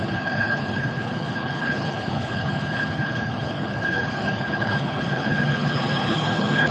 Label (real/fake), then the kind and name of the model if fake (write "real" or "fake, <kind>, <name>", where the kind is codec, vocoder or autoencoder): fake, codec, HILCodec